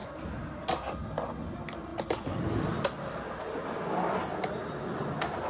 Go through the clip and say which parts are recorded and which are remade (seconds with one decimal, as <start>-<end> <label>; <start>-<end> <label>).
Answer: 0.0-5.5 recorded